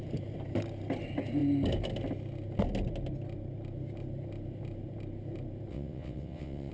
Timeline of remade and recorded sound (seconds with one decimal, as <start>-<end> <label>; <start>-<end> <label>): 0.0-5.7 recorded; 5.7-6.7 remade